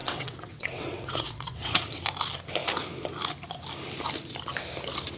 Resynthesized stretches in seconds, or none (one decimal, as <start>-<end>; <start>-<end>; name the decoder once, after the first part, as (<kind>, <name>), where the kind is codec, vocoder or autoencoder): 0.0-2.0 (vocoder, WaveNeXt)

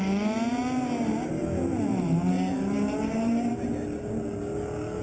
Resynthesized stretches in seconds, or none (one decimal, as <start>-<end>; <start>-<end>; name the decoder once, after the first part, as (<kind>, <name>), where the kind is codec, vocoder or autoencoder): 1.9-3.5 (vocoder, BigVGAN v2)

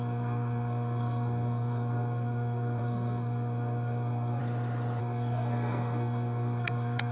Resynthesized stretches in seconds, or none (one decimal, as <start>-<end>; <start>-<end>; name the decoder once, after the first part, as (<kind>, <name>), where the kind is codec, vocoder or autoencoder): 0.0-4.4 (codec, SNAC); 5.0-7.1

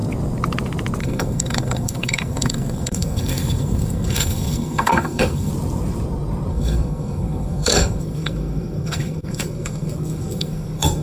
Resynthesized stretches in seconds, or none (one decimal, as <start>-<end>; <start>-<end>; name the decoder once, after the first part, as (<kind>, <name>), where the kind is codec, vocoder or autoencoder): 1.0-5.5 (codec, SNAC); 6.5-11.0

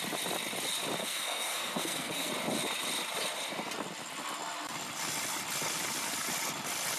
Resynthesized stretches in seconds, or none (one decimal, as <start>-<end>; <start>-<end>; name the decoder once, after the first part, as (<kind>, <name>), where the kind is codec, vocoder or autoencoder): 1.0-2.3 (codec, SNAC)